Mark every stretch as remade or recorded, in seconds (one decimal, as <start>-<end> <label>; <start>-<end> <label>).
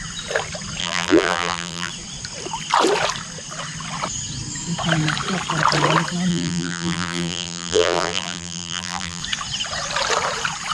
0.0-0.8 recorded; 0.8-1.9 remade; 1.9-6.3 recorded; 6.3-9.2 remade; 9.2-10.7 recorded